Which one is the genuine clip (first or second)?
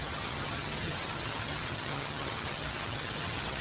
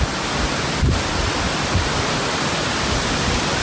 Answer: second